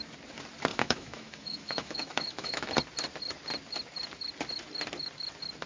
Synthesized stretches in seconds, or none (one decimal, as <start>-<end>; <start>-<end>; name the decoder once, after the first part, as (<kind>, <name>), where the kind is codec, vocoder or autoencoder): 0.7-2.7 (autoencoder, DAC-VAE)